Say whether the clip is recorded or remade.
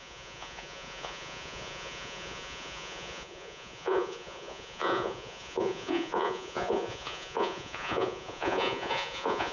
remade